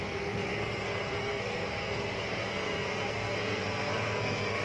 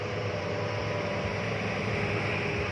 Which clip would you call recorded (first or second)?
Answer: second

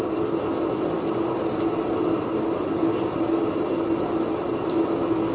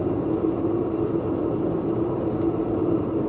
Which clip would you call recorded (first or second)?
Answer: first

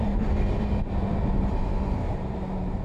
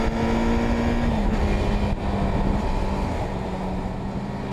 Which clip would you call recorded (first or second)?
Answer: second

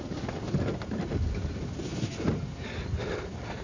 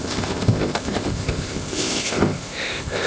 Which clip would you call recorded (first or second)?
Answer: first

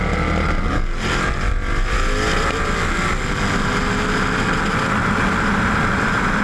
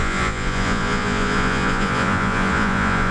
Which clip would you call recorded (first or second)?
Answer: first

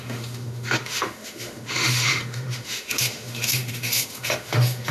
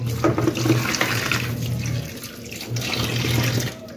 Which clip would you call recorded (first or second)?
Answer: second